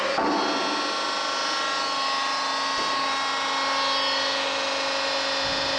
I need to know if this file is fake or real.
real